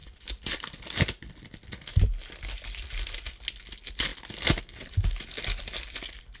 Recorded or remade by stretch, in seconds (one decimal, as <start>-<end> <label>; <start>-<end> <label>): 0.0-6.4 recorded